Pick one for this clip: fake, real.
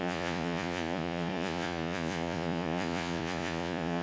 fake